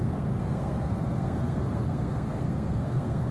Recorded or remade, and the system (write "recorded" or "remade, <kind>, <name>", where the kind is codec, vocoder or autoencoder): remade, codec, SNAC